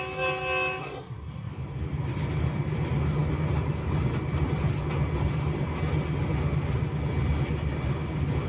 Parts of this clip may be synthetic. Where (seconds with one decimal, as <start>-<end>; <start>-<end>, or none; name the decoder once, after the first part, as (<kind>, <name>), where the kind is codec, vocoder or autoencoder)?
0.8-1.5 (codec, SNAC)